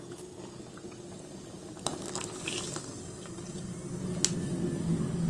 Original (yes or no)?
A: yes